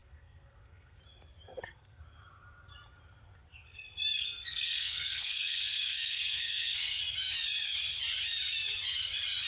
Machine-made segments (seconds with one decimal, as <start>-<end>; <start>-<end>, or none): 0.0-1.0; 1.5-2.0; 3.5-7.0